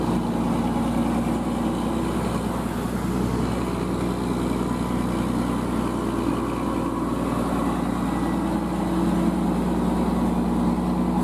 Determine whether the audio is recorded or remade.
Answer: recorded